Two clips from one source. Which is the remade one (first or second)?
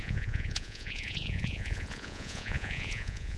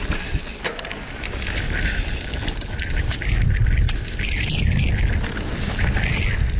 first